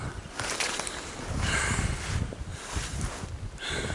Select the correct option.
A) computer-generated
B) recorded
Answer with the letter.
B